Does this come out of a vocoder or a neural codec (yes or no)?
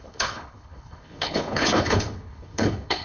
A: yes